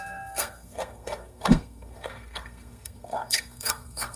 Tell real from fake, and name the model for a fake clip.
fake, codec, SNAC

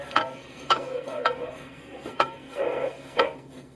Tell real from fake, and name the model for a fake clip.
fake, codec, SNAC